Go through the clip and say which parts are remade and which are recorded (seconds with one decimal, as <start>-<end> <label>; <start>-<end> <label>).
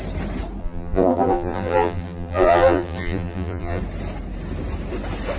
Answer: 0.0-0.6 recorded; 0.6-3.8 remade; 3.8-5.4 recorded